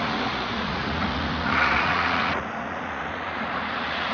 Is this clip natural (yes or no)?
no